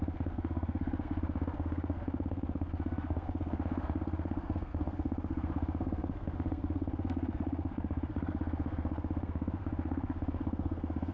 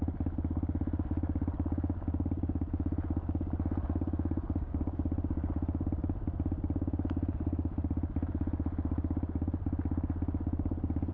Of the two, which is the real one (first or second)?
second